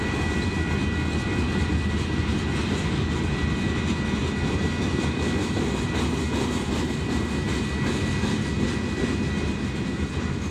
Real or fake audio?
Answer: real